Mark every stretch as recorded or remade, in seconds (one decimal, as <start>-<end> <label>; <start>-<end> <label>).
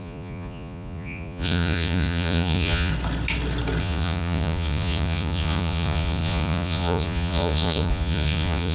0.0-2.9 remade; 2.9-3.8 recorded; 3.8-8.7 remade